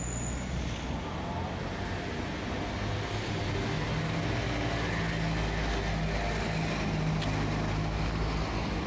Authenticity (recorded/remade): recorded